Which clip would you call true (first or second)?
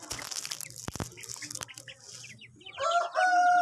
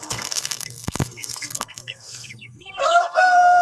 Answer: first